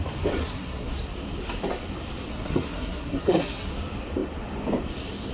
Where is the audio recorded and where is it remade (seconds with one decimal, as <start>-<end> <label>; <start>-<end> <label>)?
0.0-0.4 recorded; 0.4-0.9 remade; 0.9-2.3 recorded; 2.3-3.7 remade; 3.7-5.3 recorded